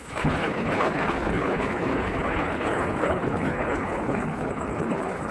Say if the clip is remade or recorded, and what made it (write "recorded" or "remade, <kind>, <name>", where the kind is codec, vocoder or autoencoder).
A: remade, codec, HILCodec